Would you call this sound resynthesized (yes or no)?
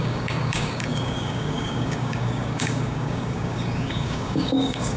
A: yes